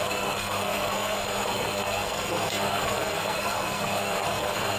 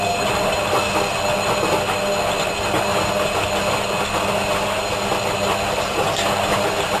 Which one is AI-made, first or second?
first